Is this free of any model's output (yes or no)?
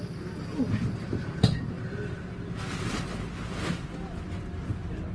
yes